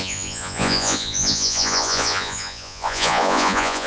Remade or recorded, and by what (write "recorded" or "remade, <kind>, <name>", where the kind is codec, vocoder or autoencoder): remade, vocoder, Vocos